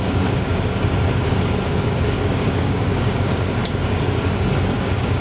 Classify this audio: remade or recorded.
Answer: remade